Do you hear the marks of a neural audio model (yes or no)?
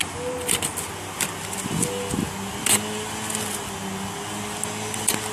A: no